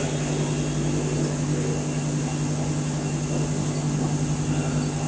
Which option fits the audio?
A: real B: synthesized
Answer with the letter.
A